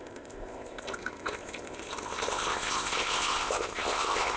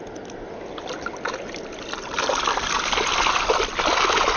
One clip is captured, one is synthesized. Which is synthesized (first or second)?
first